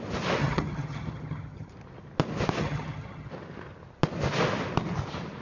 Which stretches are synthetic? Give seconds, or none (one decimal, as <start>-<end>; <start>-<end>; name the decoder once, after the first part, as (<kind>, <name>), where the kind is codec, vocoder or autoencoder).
0.4-1.7 (vocoder, HiFi-GAN); 2.6-3.3